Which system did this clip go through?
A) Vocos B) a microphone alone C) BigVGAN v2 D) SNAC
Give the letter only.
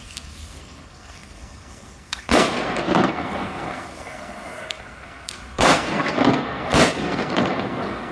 D